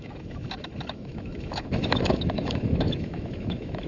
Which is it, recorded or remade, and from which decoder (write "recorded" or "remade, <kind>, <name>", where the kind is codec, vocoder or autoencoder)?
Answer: remade, autoencoder, DAC-VAE